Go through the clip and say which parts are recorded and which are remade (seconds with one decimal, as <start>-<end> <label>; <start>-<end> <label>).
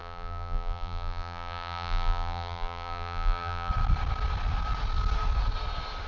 0.0-3.7 remade; 3.7-6.1 recorded